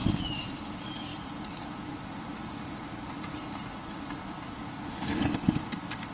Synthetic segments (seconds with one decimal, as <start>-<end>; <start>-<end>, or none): 0.0-1.7; 2.4-3.8